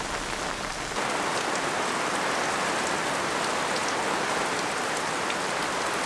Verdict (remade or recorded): recorded